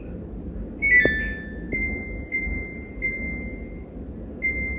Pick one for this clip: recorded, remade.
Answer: recorded